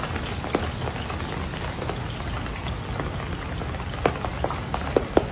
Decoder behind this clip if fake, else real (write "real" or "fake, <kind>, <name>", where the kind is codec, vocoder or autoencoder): real